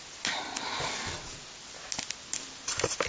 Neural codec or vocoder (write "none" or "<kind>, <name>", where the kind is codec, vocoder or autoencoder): none